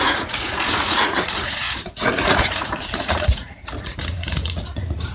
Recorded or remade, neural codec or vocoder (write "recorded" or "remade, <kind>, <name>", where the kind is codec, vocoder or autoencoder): remade, vocoder, Vocos